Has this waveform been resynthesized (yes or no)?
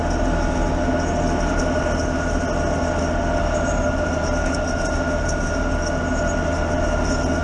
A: no